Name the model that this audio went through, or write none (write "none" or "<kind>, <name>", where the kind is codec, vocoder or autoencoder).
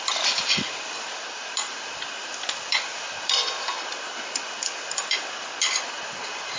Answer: none